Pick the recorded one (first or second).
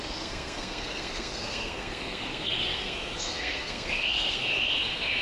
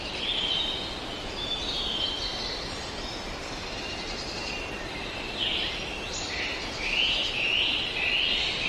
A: second